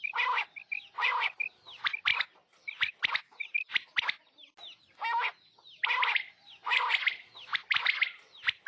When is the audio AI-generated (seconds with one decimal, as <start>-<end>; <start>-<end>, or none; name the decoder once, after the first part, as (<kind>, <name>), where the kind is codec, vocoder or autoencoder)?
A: none